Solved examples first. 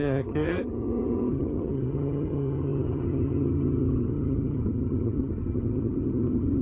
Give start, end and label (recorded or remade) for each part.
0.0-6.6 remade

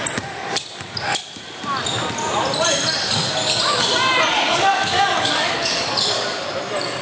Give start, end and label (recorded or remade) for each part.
0.0-4.3 recorded; 4.3-6.5 remade; 6.5-7.0 recorded

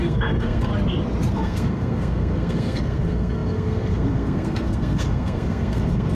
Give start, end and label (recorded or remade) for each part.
0.0-0.7 remade; 0.7-1.3 recorded; 1.3-6.1 remade